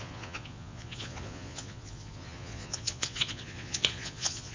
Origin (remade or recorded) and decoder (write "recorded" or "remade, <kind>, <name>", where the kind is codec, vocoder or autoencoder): remade, vocoder, Vocos